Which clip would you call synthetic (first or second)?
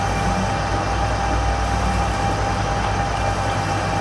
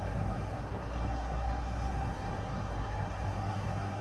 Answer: second